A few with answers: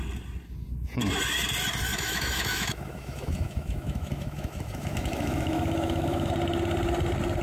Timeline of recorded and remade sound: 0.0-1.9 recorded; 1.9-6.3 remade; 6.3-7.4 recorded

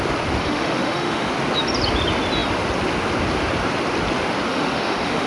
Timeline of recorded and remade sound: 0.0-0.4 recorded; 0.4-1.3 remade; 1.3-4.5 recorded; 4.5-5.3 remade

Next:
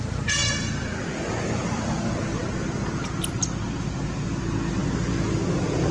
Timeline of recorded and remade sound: 0.0-5.9 recorded

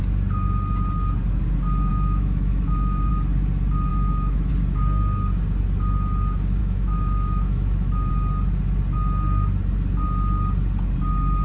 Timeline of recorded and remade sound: 0.0-1.9 recorded; 1.9-3.1 remade; 3.1-3.9 recorded; 3.9-4.5 remade; 4.5-6.6 recorded; 6.6-8.1 remade; 8.1-11.4 recorded